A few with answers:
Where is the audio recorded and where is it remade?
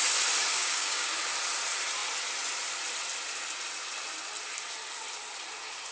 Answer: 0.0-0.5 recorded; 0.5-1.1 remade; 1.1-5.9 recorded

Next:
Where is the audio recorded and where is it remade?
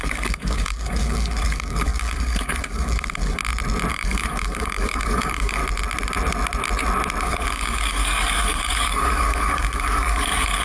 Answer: 0.0-3.4 remade; 3.4-3.9 recorded; 3.9-5.6 remade; 5.6-7.2 recorded; 7.2-10.6 remade